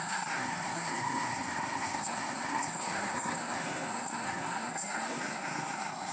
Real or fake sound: fake